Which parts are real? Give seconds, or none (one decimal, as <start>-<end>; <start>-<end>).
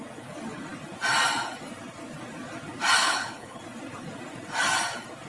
0.0-3.0; 3.6-5.3